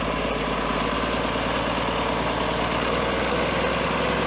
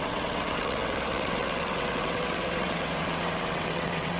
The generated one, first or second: second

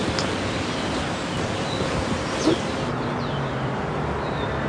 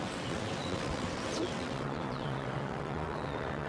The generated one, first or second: second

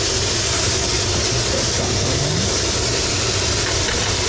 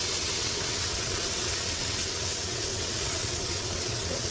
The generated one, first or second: second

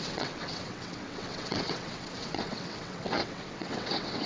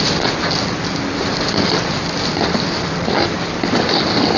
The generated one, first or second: first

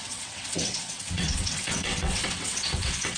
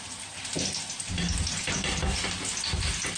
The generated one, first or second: first